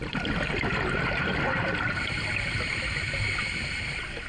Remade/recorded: recorded